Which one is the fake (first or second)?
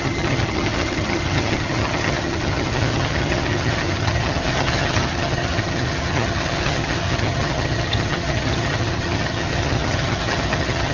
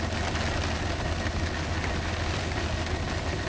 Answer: first